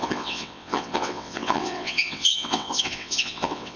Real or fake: fake